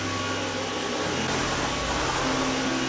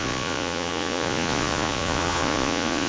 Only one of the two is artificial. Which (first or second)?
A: second